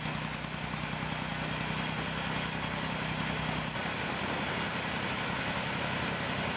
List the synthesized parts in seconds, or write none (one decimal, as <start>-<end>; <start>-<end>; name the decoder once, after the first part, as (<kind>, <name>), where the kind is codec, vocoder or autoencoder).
none

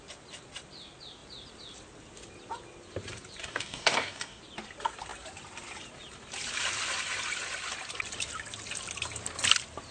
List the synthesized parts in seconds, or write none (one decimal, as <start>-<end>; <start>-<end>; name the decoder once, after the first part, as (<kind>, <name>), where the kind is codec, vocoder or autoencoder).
3.4-4.4 (codec, DAC)

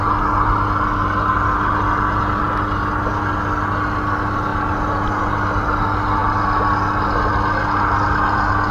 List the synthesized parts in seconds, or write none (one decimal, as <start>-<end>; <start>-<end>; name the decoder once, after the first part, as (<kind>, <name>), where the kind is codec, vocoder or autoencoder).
none

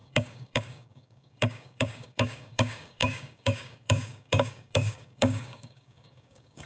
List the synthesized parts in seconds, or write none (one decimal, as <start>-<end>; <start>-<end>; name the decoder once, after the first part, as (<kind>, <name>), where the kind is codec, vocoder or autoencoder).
0.0-6.7 (codec, DAC)